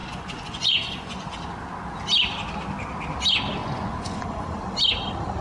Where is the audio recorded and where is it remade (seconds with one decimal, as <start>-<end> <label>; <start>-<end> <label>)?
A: 0.0-1.3 remade; 1.3-3.6 recorded; 3.6-4.5 remade; 4.5-5.4 recorded